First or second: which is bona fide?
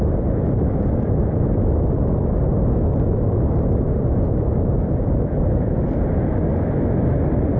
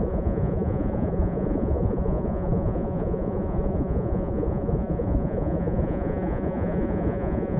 first